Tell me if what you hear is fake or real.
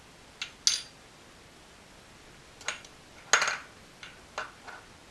real